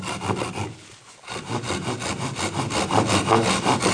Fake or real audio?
real